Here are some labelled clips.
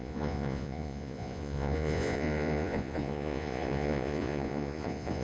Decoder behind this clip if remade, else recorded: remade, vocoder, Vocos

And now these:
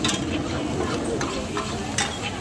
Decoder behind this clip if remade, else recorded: recorded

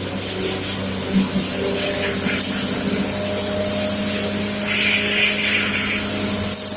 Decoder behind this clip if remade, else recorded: recorded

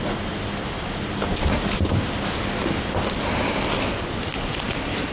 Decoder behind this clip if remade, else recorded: recorded